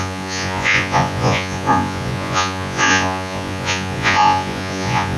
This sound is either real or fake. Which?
fake